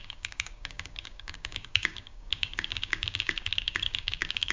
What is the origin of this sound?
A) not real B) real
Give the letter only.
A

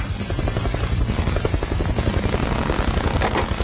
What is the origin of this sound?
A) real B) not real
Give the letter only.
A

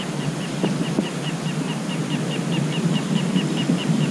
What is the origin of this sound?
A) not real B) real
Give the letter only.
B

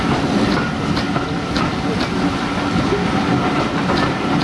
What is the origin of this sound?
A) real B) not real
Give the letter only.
A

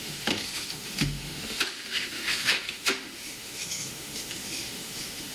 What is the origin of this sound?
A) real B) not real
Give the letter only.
B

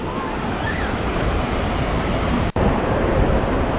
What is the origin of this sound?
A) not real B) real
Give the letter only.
A